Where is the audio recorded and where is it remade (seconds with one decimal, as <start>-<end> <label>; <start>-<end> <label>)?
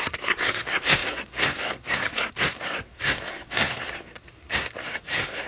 0.0-5.5 remade